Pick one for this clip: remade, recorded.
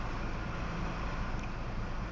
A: recorded